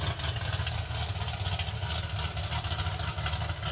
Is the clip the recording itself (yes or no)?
yes